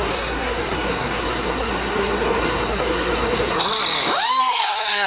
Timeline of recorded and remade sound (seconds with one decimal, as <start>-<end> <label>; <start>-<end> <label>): 0.0-3.7 remade; 3.7-4.4 recorded; 4.4-5.1 remade